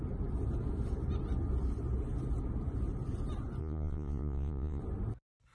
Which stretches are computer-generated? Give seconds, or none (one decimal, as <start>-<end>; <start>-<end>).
3.6-4.8